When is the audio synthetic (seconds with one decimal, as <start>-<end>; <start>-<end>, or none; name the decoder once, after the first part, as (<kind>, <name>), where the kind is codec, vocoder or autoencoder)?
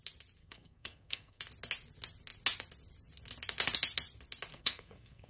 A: 0.4-1.4 (codec, SNAC); 4.5-5.3